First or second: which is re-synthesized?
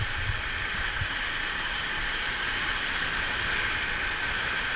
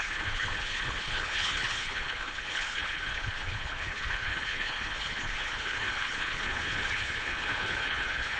second